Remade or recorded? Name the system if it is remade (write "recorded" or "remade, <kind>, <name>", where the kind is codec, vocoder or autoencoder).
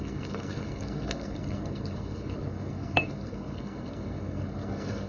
remade, codec, SNAC